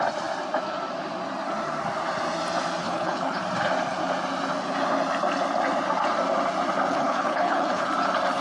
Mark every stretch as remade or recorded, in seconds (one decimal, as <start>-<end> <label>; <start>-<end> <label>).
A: 0.0-2.8 recorded; 2.8-3.4 remade; 3.4-6.9 recorded; 6.9-7.9 remade; 7.9-8.4 recorded

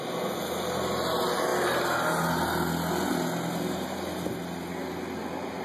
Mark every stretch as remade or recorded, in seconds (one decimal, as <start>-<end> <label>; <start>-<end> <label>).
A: 0.0-5.6 recorded

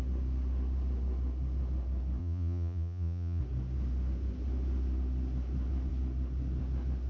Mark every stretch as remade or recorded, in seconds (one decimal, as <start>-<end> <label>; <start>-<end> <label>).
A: 0.0-2.2 recorded; 2.2-3.4 remade; 3.4-7.1 recorded